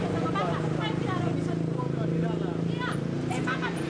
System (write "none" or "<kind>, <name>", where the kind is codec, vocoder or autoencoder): none